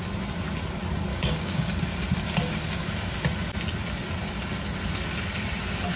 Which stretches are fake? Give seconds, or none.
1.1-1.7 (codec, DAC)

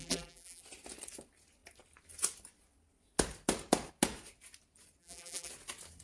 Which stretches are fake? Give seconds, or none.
0.0-0.6 (vocoder, BigVGAN v2); 5.0-5.5

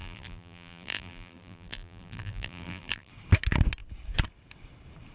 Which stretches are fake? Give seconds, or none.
0.0-3.1 (vocoder, BigVGAN v2)

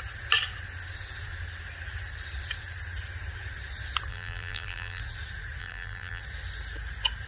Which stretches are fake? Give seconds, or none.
4.1-5.0 (vocoder, BigVGAN v2); 5.6-6.2